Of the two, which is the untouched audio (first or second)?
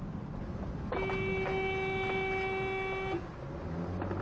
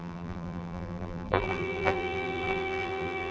first